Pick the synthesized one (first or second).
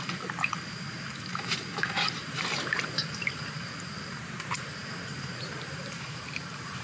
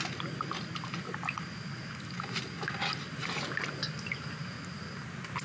first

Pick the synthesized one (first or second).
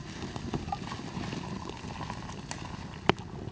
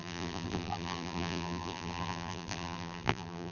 second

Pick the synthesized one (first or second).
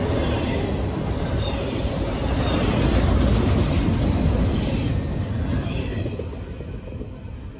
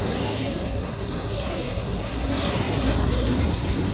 second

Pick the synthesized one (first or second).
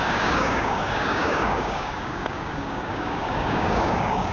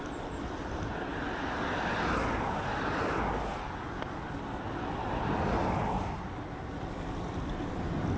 first